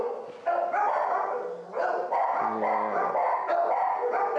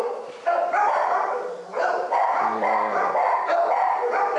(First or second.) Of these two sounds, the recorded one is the first